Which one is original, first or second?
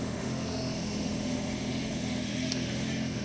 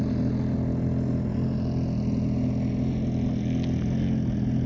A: second